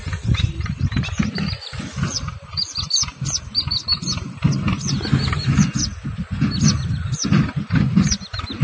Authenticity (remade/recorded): recorded